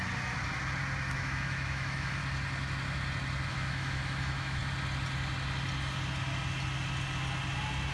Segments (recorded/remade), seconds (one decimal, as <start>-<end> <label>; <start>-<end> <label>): 0.0-1.1 recorded; 1.1-2.2 remade; 2.2-3.5 recorded; 3.5-4.6 remade; 4.6-7.9 recorded